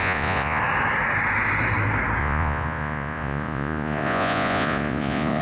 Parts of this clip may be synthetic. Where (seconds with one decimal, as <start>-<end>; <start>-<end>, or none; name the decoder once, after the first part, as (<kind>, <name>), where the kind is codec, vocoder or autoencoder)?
0.0-0.6 (vocoder, Vocos); 2.2-5.4